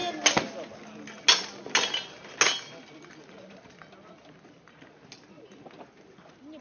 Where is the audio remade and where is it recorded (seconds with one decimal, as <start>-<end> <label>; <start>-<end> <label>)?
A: 0.0-6.6 recorded